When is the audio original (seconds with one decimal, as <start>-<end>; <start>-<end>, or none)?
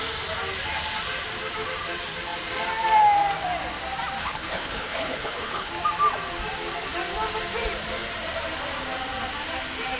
0.0-4.2; 5.7-10.0